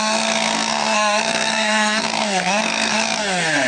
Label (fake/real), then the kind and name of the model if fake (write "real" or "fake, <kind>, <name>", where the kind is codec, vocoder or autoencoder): fake, codec, SNAC